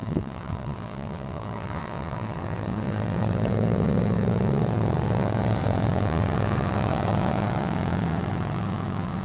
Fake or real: fake